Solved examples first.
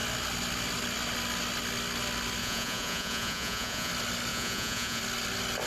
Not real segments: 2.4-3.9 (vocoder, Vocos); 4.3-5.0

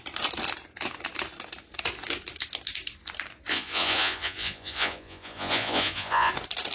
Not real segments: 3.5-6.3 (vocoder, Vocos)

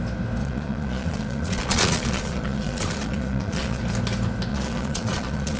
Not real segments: 0.4-3.8 (vocoder, Vocos); 4.5-5.6

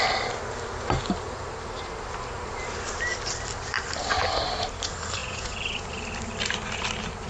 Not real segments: 5.2-5.9 (vocoder, Vocos)